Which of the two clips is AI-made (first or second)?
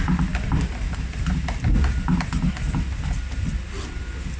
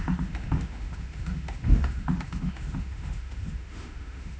second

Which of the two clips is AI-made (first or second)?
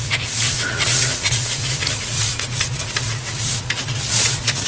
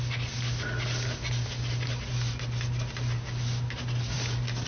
first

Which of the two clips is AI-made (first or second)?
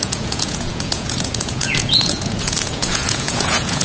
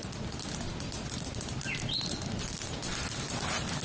first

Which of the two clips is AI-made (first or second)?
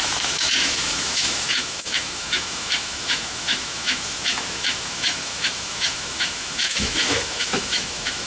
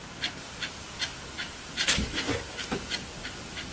first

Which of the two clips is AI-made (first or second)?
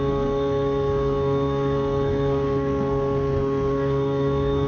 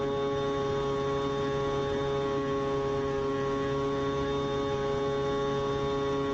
first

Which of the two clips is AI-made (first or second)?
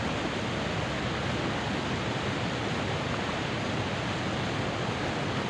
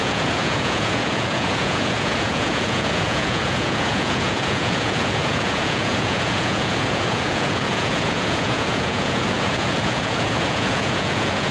second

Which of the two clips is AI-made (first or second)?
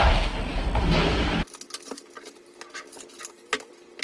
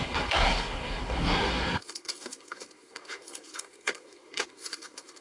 second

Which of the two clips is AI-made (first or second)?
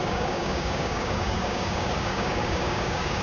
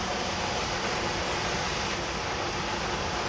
first